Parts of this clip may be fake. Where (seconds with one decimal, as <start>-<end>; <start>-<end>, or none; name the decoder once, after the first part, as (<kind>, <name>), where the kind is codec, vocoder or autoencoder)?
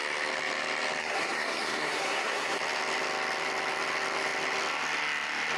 1.0-2.6 (codec, SNAC)